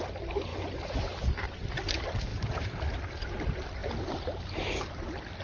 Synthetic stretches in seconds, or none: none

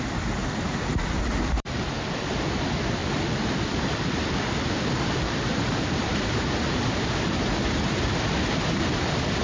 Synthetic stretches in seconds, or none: 0.4-2.5 (vocoder, BigVGAN v2); 3.0-6.2

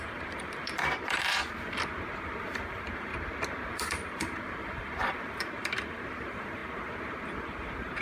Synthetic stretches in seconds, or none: 0.0-3.1 (vocoder, BigVGAN v2); 3.7-8.0

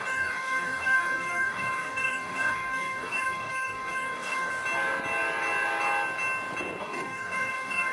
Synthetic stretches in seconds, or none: 0.0-4.5 (codec, DAC); 6.8-7.9